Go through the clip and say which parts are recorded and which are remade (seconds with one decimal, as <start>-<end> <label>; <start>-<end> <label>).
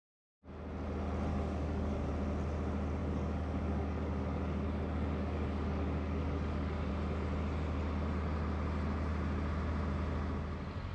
0.0-1.3 recorded; 1.3-2.1 remade; 2.1-3.0 recorded; 3.0-6.9 remade; 6.9-10.9 recorded